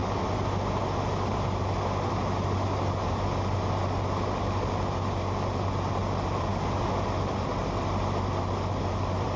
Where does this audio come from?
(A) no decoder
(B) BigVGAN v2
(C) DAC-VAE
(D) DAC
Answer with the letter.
A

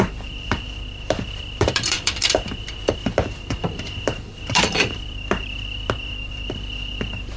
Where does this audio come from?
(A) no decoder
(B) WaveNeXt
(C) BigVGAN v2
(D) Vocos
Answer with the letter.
C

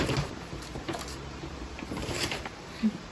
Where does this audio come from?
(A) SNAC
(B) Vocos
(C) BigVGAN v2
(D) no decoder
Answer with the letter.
C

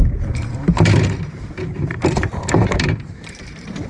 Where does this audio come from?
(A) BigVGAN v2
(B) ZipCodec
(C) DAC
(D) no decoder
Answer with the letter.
A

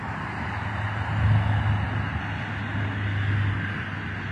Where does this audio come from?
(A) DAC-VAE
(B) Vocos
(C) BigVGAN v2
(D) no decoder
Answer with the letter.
D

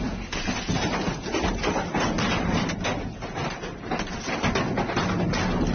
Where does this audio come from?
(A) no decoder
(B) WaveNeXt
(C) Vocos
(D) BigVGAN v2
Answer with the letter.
A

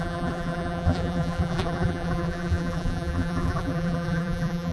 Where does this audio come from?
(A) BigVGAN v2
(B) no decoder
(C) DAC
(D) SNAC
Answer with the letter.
A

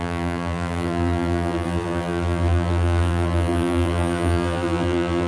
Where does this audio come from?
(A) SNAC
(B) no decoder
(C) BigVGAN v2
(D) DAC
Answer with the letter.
C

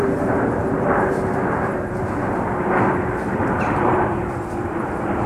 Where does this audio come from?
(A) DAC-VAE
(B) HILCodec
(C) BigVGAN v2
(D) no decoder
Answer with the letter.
C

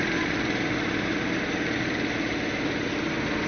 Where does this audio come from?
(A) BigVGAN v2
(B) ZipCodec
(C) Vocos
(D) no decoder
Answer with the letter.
D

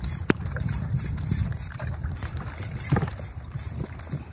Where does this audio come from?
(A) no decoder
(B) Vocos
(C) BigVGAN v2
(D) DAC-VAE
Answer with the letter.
C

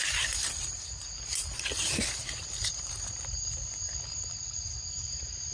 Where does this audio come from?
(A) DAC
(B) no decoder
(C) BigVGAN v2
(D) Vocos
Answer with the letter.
C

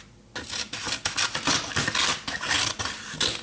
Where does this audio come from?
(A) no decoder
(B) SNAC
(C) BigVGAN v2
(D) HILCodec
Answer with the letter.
A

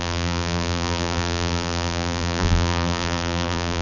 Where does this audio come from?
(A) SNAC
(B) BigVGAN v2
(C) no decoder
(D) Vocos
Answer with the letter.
B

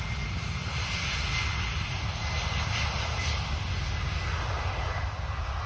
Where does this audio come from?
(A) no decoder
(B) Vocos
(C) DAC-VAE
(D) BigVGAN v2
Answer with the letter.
A